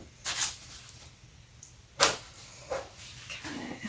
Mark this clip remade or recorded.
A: recorded